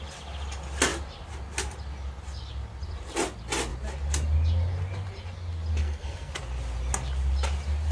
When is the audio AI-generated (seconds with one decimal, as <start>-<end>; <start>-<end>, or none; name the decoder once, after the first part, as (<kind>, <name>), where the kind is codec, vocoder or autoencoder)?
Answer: 5.8-6.3 (codec, SNAC)